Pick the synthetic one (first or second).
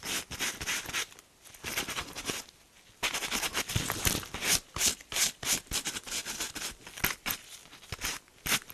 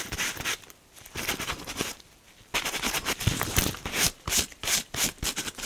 second